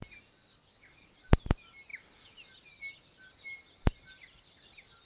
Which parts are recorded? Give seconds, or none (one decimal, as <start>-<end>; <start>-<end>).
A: 0.0-5.1